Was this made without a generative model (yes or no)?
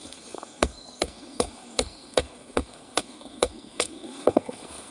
no